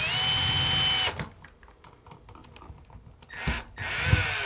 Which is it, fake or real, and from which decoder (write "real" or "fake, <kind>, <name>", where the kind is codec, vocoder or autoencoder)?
real